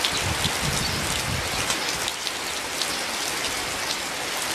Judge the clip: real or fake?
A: real